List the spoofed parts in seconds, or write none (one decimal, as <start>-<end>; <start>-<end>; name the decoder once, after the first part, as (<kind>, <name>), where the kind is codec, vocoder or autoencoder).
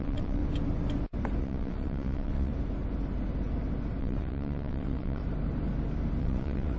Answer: 0.0-0.4 (vocoder, WaveNeXt); 1.4-2.5; 4.0-5.2; 6.2-6.8